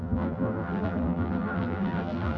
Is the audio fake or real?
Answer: fake